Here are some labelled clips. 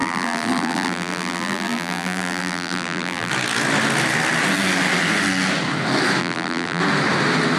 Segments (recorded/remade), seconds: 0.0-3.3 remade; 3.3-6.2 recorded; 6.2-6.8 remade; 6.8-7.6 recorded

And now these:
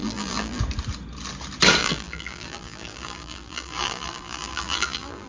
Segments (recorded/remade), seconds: 0.0-0.6 remade; 0.6-1.8 recorded; 1.8-5.3 remade

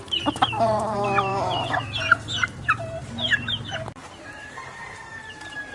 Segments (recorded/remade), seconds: 0.0-5.7 remade

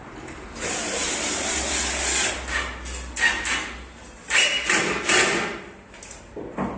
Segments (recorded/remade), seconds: 0.0-6.8 recorded

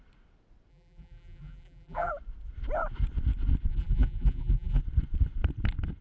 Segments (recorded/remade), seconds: 0.0-0.7 recorded; 0.7-2.1 remade; 2.1-3.7 recorded; 3.7-4.8 remade; 4.8-6.0 recorded